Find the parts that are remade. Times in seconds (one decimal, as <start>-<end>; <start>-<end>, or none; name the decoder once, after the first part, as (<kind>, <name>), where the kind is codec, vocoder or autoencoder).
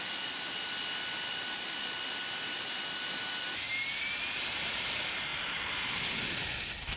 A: none